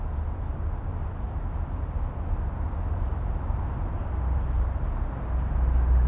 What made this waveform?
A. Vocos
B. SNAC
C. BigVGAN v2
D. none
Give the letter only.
D